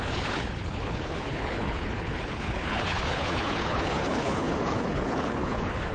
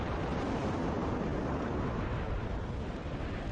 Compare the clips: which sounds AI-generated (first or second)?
first